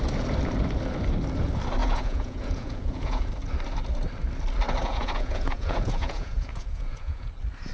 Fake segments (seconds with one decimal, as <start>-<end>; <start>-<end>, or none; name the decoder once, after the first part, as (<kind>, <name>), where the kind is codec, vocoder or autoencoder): 1.8-3.3 (vocoder, Vocos); 4.8-7.3